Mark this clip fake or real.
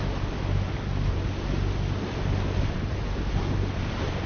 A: real